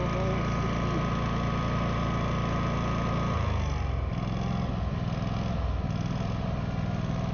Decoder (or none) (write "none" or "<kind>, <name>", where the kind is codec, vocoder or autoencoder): none